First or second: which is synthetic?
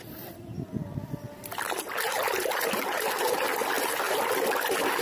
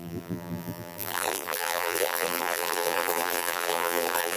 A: second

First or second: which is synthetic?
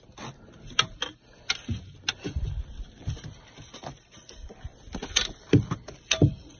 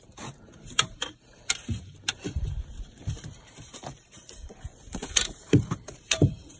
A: second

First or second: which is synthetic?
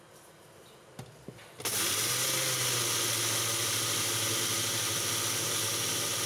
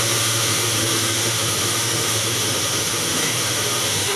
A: second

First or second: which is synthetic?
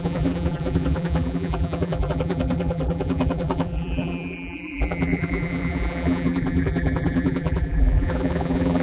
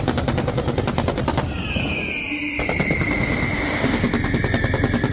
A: first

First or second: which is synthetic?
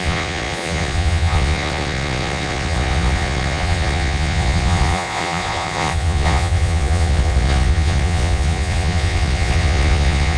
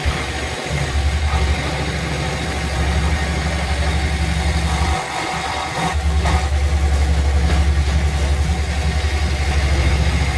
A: first